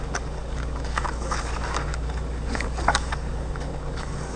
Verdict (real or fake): fake